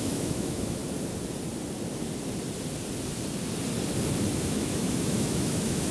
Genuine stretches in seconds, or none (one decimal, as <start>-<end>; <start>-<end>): 0.8-4.3